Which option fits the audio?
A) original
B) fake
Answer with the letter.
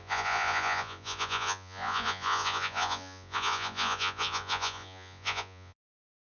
B